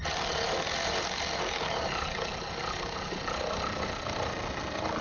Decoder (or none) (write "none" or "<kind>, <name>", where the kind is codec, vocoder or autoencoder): none